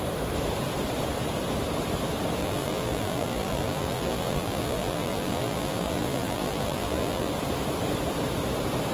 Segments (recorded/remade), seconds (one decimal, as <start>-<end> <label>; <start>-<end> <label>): 0.0-2.4 recorded; 2.4-7.3 remade; 7.3-8.9 recorded